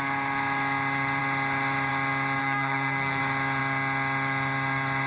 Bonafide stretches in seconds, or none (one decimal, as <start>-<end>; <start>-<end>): 0.0-2.4; 3.2-5.1